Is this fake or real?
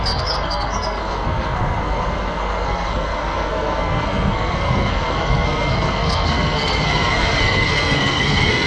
fake